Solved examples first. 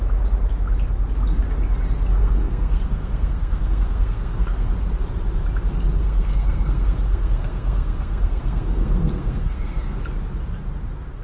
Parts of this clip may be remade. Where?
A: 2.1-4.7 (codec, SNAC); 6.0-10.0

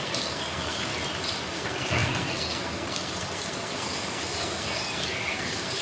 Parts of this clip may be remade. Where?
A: 0.0-0.9 (codec, SNAC); 1.4-5.8

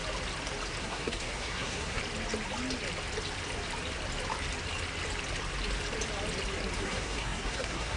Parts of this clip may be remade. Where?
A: 0.8-2.0 (codec, SNAC); 6.8-8.0

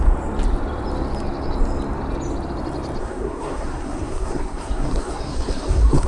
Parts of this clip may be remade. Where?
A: 3.0-6.1 (codec, SNAC)

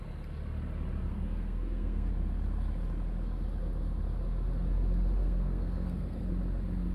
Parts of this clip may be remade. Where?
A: 1.1-2.1 (codec, SNAC); 5.2-6.3

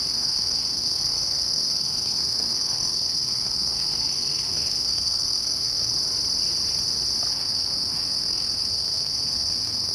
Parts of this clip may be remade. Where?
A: 0.0-5.9 (codec, SNAC); 7.3-9.9